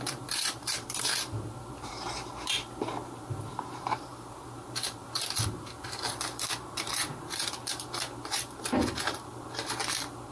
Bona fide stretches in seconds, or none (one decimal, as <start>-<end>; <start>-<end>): 1.1-1.7